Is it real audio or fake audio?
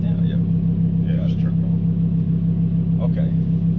real